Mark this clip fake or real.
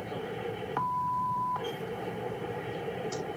fake